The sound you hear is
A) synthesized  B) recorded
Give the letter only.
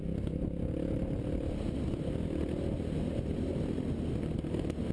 B